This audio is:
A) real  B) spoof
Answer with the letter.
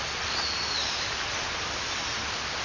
A